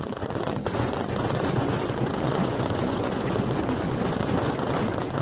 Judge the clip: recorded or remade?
remade